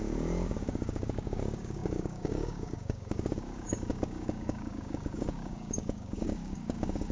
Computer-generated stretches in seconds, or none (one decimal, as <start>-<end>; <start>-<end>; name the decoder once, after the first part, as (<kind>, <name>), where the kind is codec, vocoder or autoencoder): 0.0-7.1 (codec, DAC)